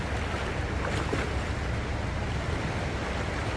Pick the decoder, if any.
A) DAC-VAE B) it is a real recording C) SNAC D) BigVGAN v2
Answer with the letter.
B